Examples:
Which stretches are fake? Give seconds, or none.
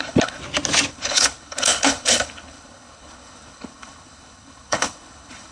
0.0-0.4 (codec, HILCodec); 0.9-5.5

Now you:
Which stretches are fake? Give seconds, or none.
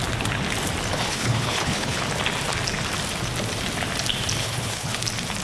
0.9-2.0 (codec, HILCodec); 4.4-5.0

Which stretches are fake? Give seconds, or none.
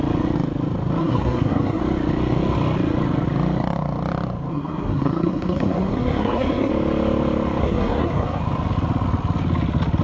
1.0-1.8 (codec, SNAC); 4.5-6.7; 7.6-8.4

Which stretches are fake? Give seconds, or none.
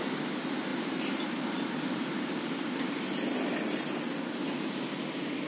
0.7-2.7 (vocoder, BigVGAN v2)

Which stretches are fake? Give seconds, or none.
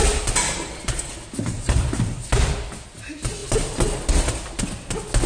none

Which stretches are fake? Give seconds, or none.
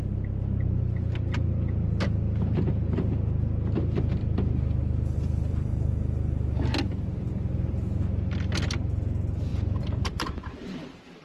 4.2-5.9 (vocoder, BigVGAN v2); 9.5-10.7